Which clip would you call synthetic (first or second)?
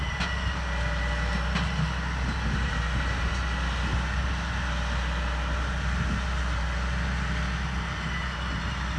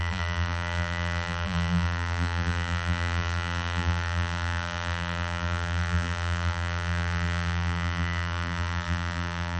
second